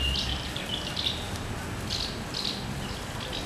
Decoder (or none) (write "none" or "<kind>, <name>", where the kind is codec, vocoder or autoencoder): none